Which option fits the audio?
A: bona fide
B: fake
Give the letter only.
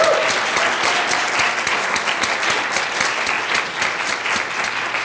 A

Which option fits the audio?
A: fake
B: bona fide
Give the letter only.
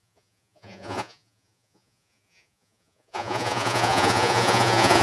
A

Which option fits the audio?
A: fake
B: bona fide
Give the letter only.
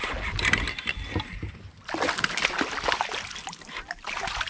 B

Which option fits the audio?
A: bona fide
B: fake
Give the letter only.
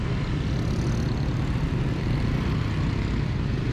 A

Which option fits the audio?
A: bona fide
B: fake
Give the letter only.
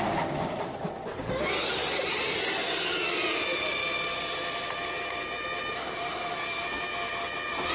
A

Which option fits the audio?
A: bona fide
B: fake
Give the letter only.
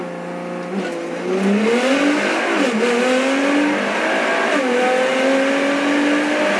A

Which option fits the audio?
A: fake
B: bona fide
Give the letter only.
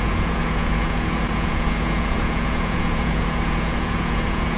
A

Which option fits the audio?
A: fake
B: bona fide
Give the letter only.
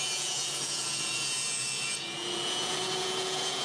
A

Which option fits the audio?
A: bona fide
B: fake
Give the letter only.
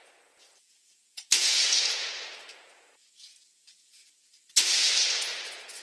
B